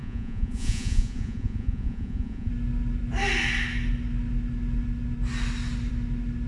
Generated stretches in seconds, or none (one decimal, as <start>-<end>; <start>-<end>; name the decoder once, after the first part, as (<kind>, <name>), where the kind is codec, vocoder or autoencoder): 0.0-2.5 (vocoder, Vocos)